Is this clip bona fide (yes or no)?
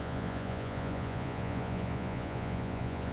no